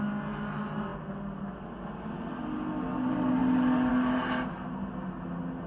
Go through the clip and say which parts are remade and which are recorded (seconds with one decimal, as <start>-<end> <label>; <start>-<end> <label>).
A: 0.0-5.7 recorded